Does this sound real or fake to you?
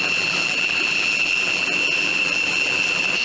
fake